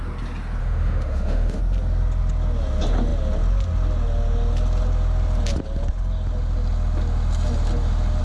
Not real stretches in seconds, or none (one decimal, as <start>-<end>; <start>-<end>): 0.6-1.6